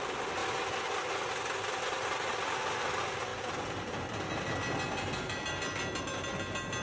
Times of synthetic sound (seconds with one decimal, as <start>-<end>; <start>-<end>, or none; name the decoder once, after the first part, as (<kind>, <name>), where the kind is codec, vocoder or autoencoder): none